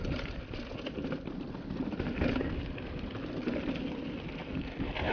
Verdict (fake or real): real